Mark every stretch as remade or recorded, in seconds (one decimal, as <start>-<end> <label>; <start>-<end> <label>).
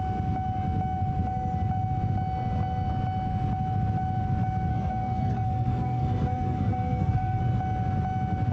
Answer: 0.0-4.7 recorded; 4.7-7.4 remade; 7.4-8.5 recorded